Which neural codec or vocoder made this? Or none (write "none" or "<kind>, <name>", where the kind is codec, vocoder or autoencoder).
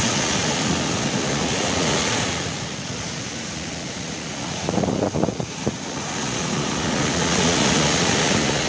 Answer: vocoder, Vocos